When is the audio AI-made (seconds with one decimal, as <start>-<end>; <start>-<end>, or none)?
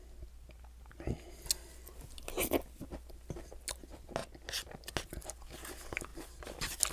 none